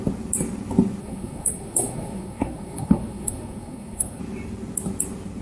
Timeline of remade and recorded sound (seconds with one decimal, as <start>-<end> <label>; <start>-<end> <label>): 0.0-1.0 recorded; 1.0-4.2 remade; 4.2-5.4 recorded